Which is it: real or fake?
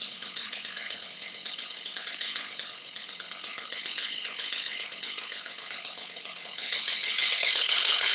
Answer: fake